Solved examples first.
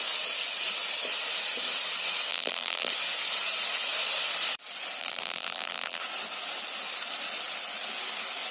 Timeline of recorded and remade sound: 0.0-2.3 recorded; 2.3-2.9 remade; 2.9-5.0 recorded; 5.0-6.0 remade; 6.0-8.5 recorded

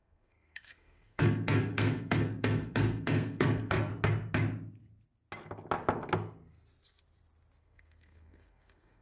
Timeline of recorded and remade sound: 0.0-3.9 remade; 3.9-7.6 recorded; 7.6-9.0 remade

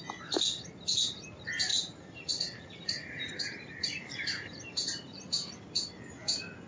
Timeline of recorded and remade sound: 0.0-1.7 recorded; 1.7-5.6 remade; 5.6-6.7 recorded

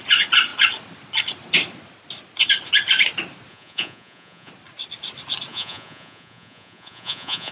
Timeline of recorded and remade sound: 0.0-3.5 recorded; 3.5-4.5 remade; 4.5-5.5 recorded; 5.5-7.5 remade

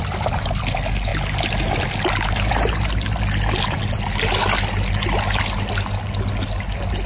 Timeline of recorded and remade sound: 0.0-7.1 recorded

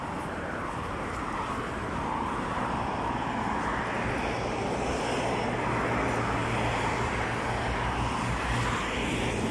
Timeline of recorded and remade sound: 0.0-9.5 recorded

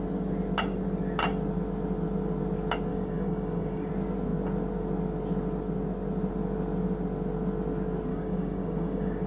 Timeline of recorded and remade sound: 0.0-2.9 recorded; 2.9-3.9 remade; 3.9-8.1 recorded; 8.1-9.3 remade

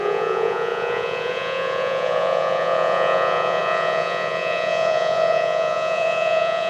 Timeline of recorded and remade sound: 0.0-6.7 remade